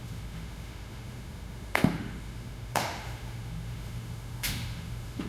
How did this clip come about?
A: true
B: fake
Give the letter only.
B